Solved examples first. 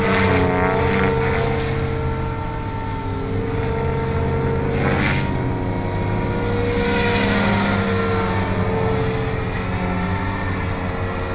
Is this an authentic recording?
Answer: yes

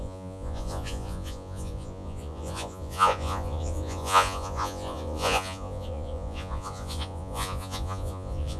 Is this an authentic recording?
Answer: no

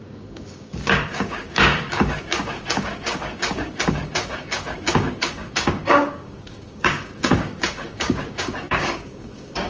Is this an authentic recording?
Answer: no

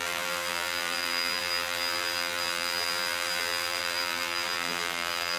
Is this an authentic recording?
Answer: no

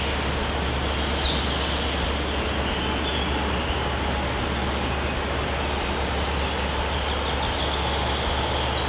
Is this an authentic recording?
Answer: yes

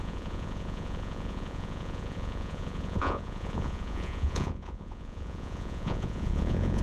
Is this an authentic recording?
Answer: no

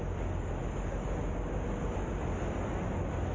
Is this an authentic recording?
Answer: yes